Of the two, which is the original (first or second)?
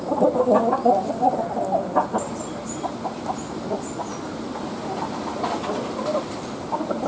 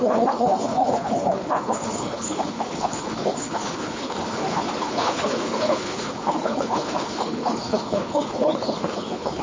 first